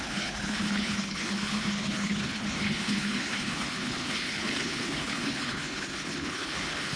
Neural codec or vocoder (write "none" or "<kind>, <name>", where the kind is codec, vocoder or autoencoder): codec, HILCodec